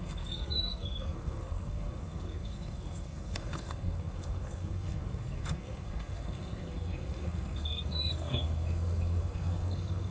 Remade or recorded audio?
remade